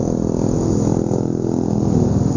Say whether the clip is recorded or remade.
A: recorded